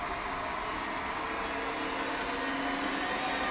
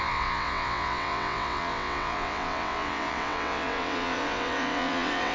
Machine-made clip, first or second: second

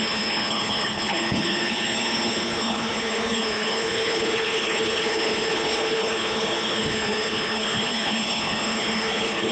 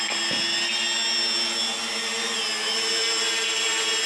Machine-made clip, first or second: first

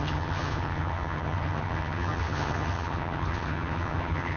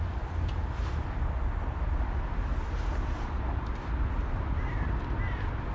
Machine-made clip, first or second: first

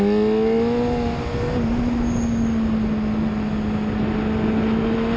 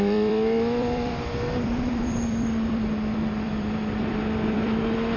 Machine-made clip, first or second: second